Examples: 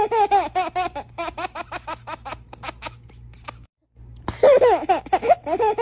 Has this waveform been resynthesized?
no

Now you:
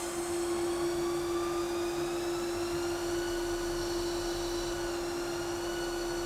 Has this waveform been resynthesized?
no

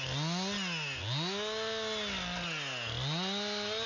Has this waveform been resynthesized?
no